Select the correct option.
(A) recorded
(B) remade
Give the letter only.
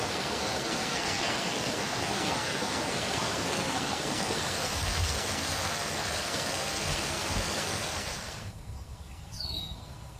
B